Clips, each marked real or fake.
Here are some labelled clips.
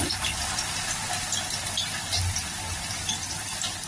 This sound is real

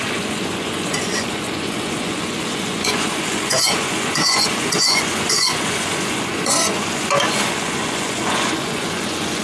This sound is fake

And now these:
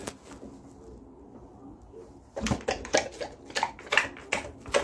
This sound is real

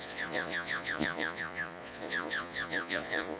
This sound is fake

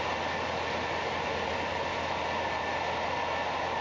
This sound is real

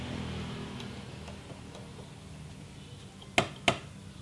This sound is real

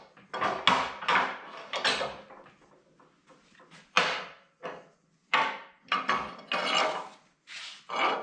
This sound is real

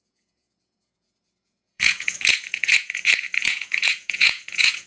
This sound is fake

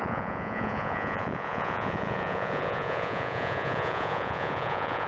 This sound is fake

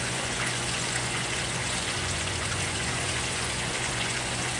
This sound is fake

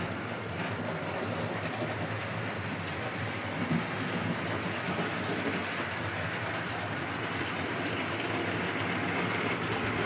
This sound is real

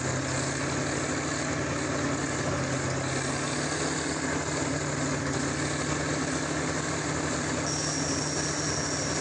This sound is real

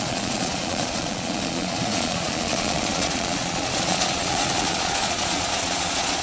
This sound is fake